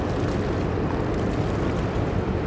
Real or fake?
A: real